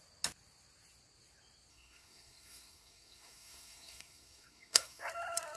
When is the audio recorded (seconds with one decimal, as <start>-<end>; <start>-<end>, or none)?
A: 0.0-1.7; 5.1-5.6